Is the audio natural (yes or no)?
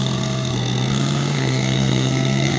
no